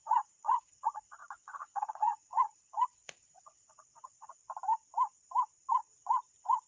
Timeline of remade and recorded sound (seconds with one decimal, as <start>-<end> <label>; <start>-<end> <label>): 0.0-4.4 remade; 4.4-5.7 recorded; 5.7-6.7 remade